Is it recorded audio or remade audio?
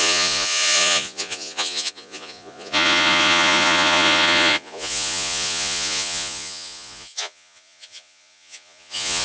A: remade